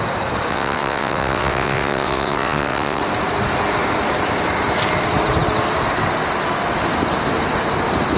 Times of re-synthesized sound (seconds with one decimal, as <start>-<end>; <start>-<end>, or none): 0.5-3.0